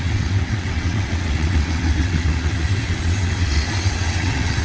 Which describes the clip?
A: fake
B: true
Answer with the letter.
A